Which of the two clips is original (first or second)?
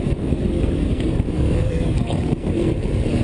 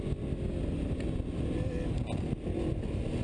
second